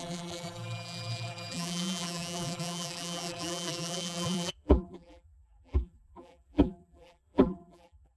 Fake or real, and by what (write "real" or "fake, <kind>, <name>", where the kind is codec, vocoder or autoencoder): fake, vocoder, BigVGAN v2